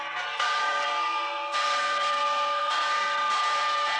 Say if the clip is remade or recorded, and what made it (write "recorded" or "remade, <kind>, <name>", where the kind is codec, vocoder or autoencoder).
remade, codec, SNAC